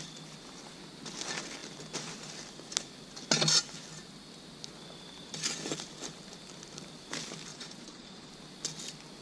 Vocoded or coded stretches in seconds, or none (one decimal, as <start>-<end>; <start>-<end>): 7.5-8.3